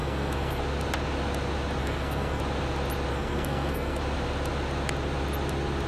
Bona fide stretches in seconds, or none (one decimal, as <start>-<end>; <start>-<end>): 0.6-1.8; 2.4-3.1; 4.0-5.9